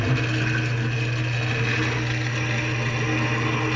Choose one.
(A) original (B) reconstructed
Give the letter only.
A